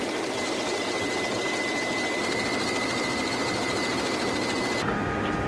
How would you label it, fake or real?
real